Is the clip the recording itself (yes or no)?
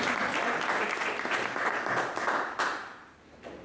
yes